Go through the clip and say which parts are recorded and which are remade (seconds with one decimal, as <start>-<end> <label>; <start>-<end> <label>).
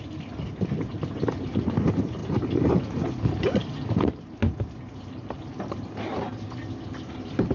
0.0-7.5 recorded